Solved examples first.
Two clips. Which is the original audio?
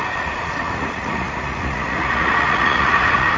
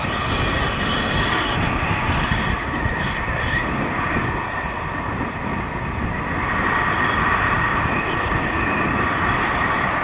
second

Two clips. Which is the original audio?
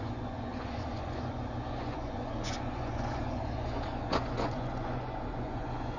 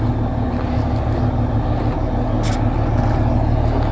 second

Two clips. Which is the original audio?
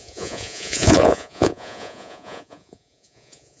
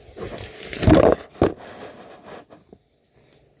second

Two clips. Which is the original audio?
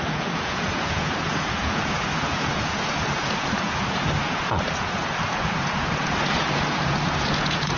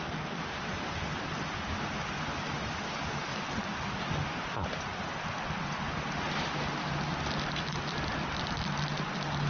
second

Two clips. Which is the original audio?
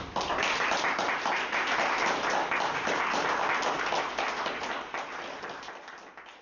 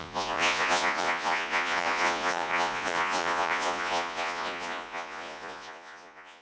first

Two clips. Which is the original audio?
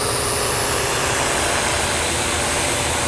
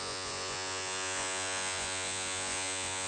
first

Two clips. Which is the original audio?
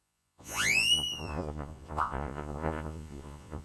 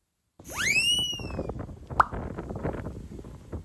second